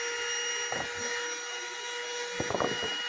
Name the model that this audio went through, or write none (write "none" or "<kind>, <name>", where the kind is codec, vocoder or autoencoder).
none